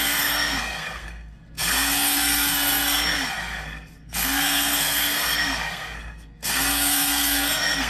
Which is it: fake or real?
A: fake